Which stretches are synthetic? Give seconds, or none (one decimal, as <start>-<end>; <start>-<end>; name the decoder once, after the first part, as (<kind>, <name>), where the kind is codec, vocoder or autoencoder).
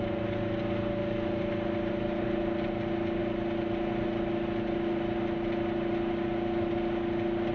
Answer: none